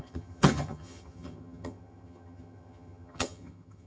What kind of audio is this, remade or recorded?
remade